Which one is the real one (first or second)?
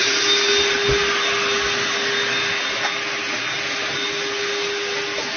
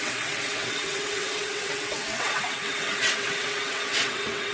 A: first